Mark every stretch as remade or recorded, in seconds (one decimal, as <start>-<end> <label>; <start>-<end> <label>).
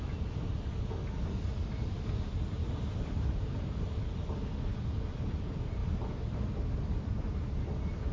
0.0-2.6 recorded; 2.6-3.7 remade; 3.7-5.8 recorded; 5.8-6.7 remade; 6.7-8.1 recorded